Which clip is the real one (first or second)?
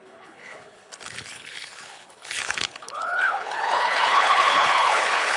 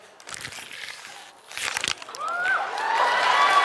second